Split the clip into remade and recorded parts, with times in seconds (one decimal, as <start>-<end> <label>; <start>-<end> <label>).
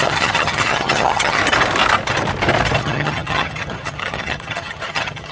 0.0-1.4 remade; 1.4-2.8 recorded; 2.8-5.3 remade